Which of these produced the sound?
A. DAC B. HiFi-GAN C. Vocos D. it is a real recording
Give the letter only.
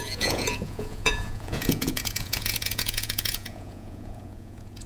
C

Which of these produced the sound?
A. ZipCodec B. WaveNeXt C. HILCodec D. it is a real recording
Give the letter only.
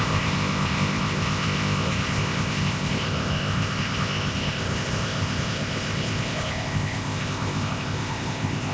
A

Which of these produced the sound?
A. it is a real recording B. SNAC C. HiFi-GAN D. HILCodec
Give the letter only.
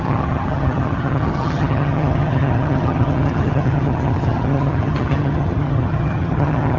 C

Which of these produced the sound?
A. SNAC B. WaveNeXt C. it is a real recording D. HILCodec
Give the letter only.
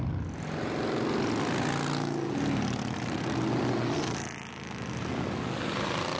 C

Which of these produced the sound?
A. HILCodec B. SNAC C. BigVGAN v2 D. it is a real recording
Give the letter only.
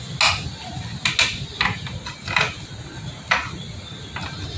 D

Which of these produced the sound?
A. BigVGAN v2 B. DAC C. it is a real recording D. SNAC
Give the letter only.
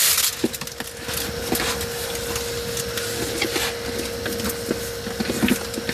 C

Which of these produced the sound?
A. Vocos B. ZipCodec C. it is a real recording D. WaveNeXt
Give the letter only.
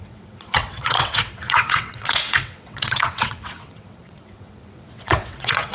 D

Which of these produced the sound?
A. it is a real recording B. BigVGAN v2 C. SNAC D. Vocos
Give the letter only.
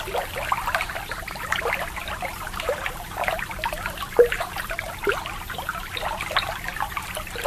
B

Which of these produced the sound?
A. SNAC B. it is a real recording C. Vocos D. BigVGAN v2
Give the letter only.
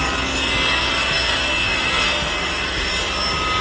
B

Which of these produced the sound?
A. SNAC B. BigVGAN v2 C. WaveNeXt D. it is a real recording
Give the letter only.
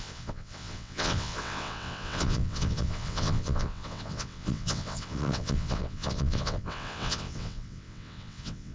C